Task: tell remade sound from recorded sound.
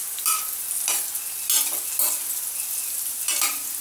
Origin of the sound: recorded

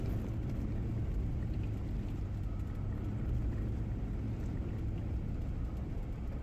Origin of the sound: recorded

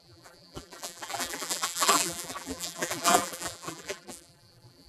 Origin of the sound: remade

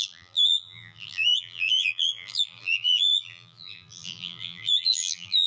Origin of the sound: remade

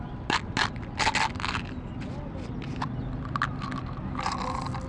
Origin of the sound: recorded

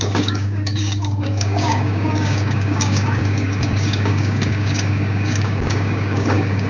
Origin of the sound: remade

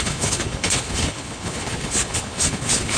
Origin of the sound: remade